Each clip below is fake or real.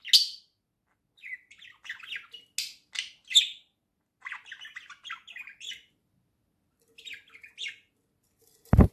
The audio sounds real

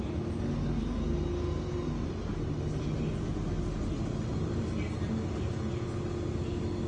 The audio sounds real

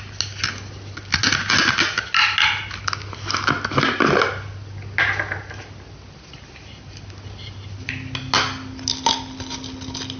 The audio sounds real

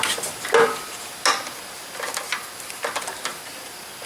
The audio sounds real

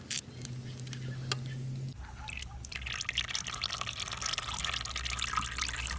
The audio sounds real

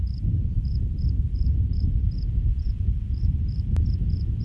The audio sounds fake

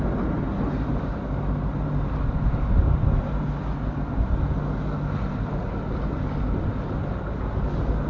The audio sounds real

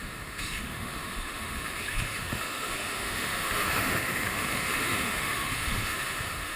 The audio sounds fake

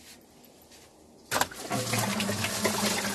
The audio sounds real